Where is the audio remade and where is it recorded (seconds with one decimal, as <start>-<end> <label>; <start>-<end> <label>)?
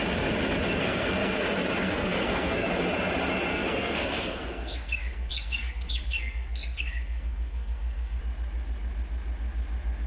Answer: 0.0-0.8 recorded; 0.8-1.4 remade; 1.4-1.8 recorded; 1.8-2.7 remade; 2.7-3.5 recorded; 3.5-8.2 remade; 8.2-10.1 recorded